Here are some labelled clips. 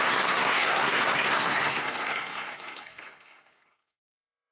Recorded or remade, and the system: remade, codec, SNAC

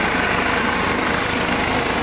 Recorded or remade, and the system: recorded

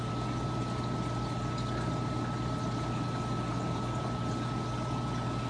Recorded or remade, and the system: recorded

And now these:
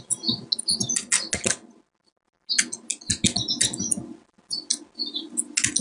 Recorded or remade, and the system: recorded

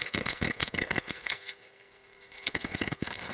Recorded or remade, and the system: remade, codec, SNAC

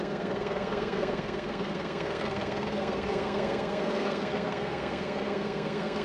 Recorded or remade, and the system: remade, codec, SNAC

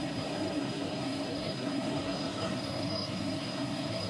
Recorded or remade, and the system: remade, codec, SNAC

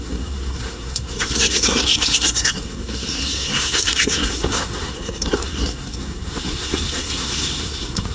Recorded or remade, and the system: remade, codec, SNAC